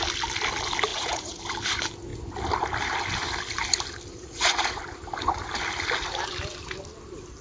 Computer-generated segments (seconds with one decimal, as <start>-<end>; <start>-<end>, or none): 0.9-1.4; 4.1-4.8